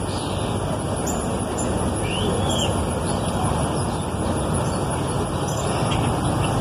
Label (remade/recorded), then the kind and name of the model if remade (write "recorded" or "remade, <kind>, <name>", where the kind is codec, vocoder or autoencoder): recorded